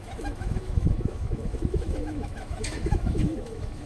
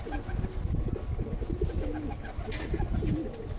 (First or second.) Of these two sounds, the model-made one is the first